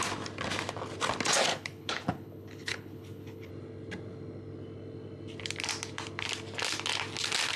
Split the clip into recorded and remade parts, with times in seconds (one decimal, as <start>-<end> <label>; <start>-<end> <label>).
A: 0.0-1.5 recorded; 1.5-3.5 remade; 3.5-7.6 recorded